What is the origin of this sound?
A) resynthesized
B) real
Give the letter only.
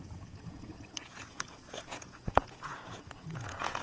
A